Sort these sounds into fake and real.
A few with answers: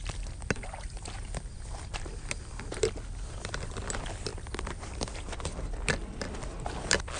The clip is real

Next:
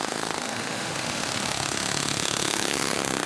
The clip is fake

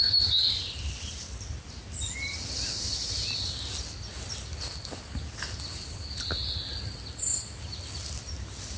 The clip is real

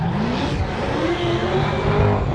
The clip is real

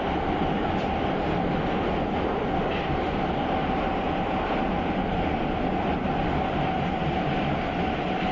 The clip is real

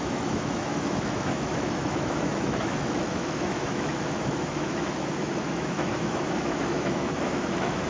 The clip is fake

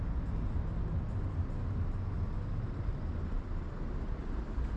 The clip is real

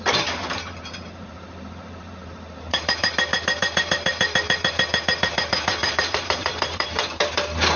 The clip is fake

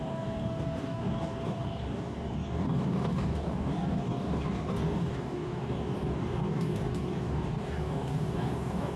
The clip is fake